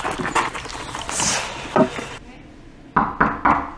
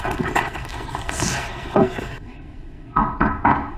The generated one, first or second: second